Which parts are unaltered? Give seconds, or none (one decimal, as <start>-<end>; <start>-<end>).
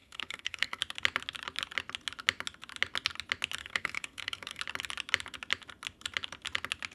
0.8-3.6; 4.6-6.9